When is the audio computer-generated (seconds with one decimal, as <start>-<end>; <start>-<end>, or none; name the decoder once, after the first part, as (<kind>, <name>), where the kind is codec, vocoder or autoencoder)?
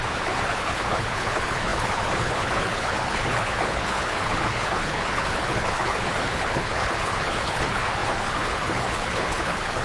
0.0-9.8 (codec, HILCodec)